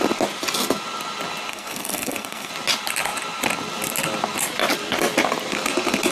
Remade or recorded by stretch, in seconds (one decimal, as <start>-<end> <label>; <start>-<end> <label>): 0.0-1.5 recorded; 1.5-2.5 remade; 2.5-6.1 recorded